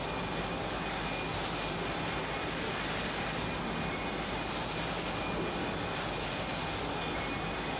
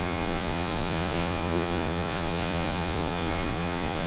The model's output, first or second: second